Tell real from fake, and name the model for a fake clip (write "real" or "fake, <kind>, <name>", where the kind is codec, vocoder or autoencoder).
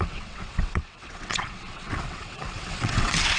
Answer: fake, vocoder, WaveNeXt